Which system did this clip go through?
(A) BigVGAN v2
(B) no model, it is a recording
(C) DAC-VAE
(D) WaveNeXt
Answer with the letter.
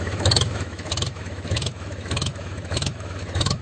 C